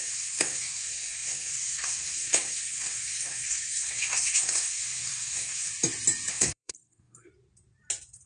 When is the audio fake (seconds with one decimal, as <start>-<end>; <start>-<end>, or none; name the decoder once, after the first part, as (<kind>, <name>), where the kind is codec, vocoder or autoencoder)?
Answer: 0.0-5.7 (codec, SNAC); 6.3-7.3